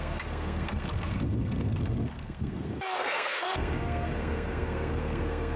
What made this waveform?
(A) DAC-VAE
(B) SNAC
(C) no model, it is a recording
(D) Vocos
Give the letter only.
B